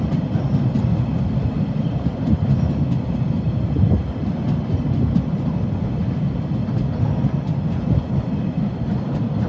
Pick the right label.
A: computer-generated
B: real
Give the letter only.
B